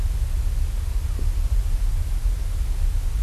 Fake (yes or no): no